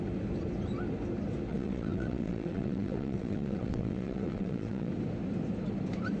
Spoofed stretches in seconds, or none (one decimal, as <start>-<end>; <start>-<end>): 1.5-4.9